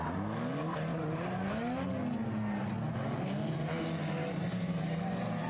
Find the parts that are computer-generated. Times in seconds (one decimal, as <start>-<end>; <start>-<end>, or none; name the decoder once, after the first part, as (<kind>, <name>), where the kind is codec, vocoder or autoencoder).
0.9-1.5 (vocoder, BigVGAN v2); 4.2-5.5